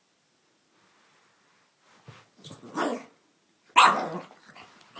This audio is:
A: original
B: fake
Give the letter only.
A